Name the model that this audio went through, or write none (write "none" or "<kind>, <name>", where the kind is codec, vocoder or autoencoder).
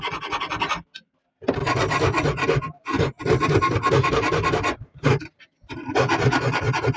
none